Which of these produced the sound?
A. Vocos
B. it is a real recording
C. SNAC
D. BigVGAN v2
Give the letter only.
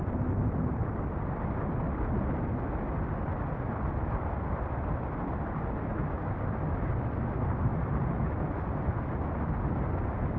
B